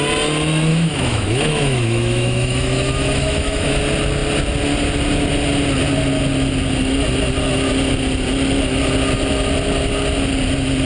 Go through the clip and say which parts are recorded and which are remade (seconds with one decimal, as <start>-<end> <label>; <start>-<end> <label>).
0.0-0.7 recorded; 0.7-3.8 remade; 3.8-10.9 recorded